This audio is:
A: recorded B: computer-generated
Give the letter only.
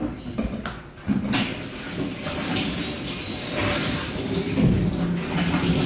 A